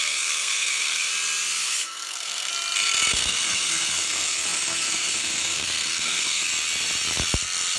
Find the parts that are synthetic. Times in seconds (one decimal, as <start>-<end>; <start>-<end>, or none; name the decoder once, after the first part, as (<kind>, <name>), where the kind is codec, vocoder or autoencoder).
0.0-1.1 (codec, SNAC); 1.6-2.5; 3.1-6.5